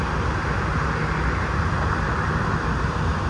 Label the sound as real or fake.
real